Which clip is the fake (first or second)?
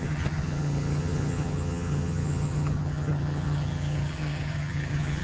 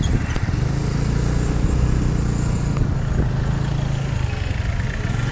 first